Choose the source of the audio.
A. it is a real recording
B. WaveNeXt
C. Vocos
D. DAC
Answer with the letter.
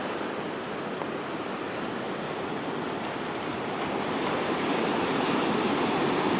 A